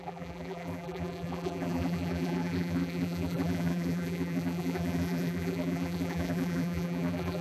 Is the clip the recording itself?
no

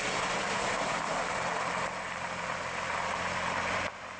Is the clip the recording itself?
no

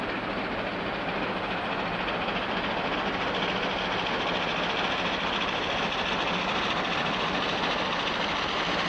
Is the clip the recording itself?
yes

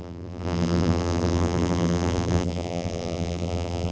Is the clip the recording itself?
no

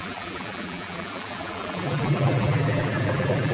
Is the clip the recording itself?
no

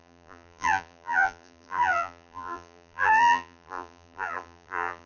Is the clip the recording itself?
no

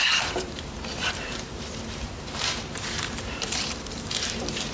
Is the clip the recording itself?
no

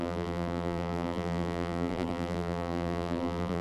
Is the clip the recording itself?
no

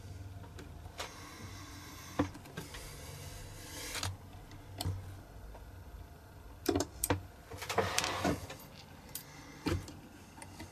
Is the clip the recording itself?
yes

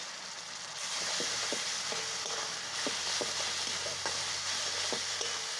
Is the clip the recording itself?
yes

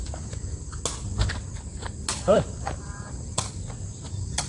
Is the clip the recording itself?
yes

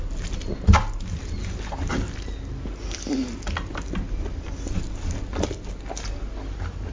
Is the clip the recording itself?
yes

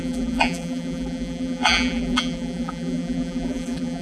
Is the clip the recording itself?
no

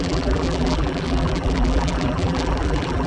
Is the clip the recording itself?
no